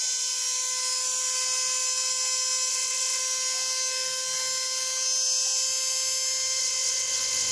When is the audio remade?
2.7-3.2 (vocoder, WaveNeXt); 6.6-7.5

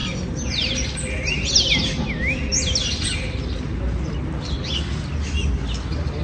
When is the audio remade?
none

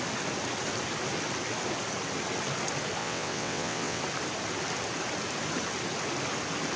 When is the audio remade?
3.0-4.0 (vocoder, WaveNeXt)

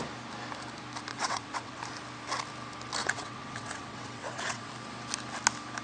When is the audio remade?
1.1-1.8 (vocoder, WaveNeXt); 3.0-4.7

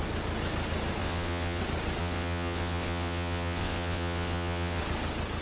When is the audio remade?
1.0-1.6 (vocoder, WaveNeXt); 2.0-4.8

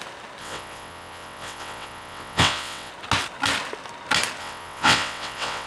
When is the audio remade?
0.4-2.9 (vocoder, WaveNeXt); 4.4-5.7

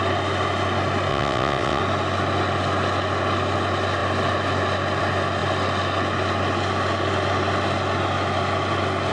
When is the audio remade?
1.1-1.8 (vocoder, WaveNeXt)

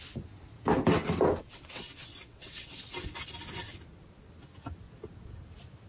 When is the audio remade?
1.4-2.8 (vocoder, WaveNeXt)